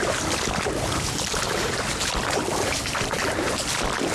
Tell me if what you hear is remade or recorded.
recorded